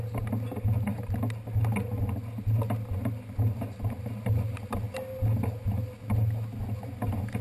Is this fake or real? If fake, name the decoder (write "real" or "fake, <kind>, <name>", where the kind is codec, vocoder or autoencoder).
real